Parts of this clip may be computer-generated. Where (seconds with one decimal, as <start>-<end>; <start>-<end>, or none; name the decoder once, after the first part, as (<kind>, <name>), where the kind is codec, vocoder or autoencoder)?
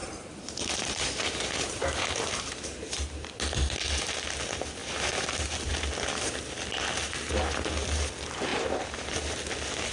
0.0-3.0 (vocoder, BigVGAN v2); 4.8-5.3; 8.5-9.1